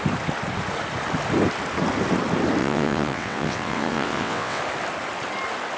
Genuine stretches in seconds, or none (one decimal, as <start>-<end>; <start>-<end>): 0.0-2.6; 4.6-5.8